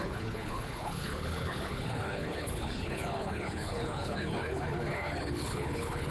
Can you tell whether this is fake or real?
fake